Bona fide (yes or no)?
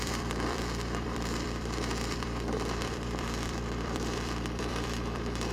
no